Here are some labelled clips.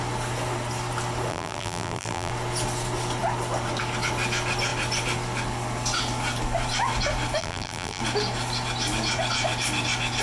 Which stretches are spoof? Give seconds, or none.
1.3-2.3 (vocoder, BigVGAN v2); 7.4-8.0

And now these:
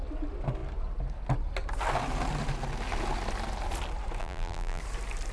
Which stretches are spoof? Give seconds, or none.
4.2-4.8 (vocoder, BigVGAN v2)

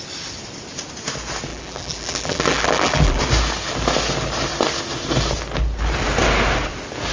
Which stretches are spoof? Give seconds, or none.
1.5-3.2 (vocoder, BigVGAN v2)

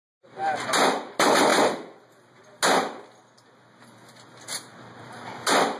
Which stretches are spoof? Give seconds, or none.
none

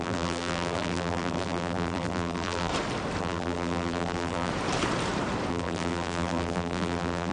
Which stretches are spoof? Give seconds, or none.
0.0-2.7 (vocoder, BigVGAN v2); 3.2-4.5; 5.5-7.3

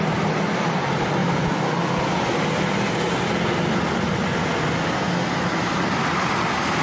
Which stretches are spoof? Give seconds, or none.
none

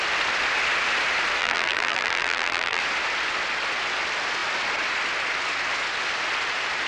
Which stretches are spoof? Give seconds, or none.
1.4-2.8 (vocoder, BigVGAN v2)